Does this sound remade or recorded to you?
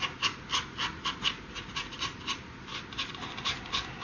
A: recorded